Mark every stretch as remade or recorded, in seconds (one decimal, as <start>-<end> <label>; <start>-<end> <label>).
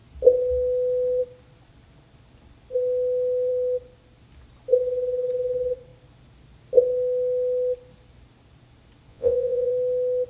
0.0-9.1 recorded; 9.1-9.7 remade; 9.7-10.3 recorded